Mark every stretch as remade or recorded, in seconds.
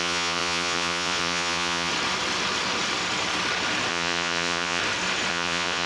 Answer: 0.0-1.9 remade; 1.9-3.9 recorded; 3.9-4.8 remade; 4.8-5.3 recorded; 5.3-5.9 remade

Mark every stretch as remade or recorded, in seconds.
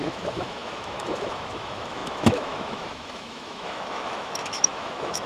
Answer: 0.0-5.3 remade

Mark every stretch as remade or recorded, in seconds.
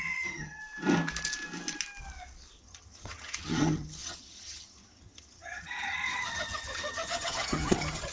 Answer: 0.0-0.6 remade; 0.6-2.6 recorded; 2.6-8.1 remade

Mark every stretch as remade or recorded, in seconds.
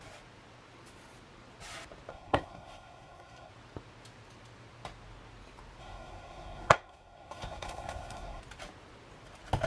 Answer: 0.0-2.1 recorded; 2.1-3.5 remade; 3.5-5.8 recorded; 5.8-8.4 remade; 8.4-9.7 recorded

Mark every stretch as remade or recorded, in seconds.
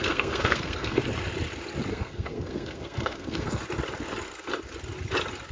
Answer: 0.0-1.0 remade; 1.0-1.9 recorded; 1.9-3.6 remade; 3.6-5.5 recorded